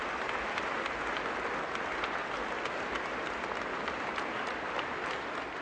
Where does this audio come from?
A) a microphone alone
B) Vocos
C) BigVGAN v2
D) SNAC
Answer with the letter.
A